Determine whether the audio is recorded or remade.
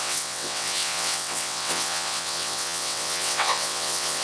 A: remade